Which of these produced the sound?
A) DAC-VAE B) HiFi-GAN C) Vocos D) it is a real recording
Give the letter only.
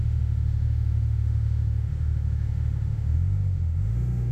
A